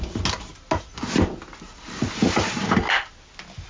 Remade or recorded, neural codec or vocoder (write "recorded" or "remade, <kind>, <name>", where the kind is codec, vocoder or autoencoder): recorded